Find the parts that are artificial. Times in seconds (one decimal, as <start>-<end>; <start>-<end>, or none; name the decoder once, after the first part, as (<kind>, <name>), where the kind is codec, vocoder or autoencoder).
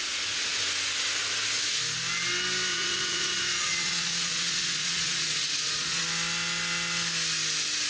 2.7-6.0 (vocoder, Vocos)